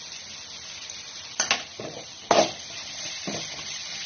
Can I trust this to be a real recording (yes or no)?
yes